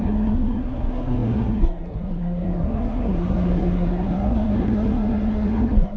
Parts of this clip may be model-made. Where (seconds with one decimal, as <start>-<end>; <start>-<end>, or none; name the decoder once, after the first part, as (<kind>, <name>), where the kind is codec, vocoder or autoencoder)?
0.0-6.0 (codec, SNAC)